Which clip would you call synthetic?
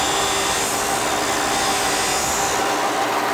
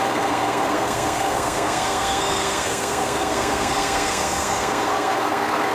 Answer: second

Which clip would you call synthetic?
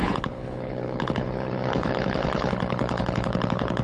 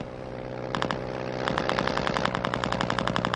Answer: first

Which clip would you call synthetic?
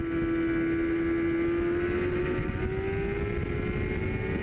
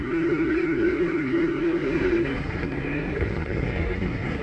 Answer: second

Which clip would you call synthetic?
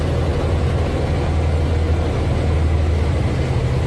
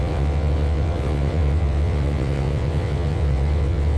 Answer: second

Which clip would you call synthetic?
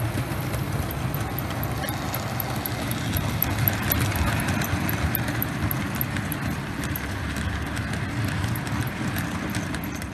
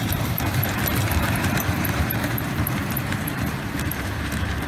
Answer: second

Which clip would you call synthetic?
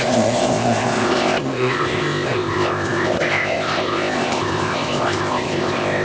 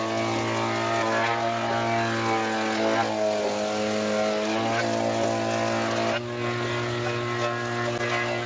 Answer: first